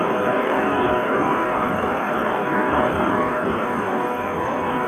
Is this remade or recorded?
remade